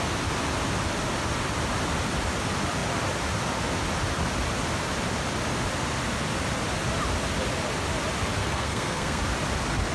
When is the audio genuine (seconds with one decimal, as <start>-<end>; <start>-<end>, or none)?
0.0-8.4; 9.2-9.9